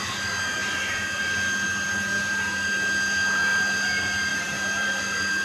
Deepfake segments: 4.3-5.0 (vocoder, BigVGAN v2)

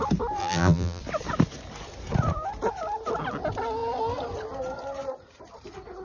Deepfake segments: 0.4-1.0 (vocoder, BigVGAN v2)

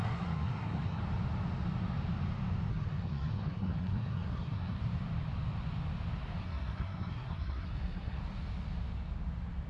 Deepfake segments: 0.0-1.0 (codec, SNAC); 2.7-4.8; 6.4-8.2

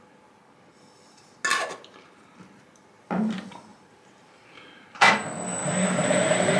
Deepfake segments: 3.7-5.1 (vocoder, BigVGAN v2); 5.6-6.6

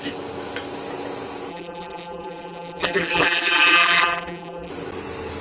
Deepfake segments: 1.5-4.7 (vocoder, BigVGAN v2)

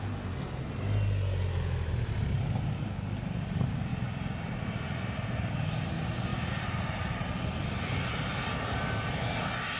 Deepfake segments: none